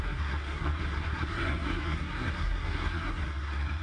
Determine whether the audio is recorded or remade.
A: remade